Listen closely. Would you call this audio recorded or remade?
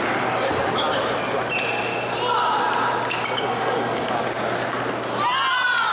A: recorded